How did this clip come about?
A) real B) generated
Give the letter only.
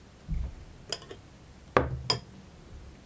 A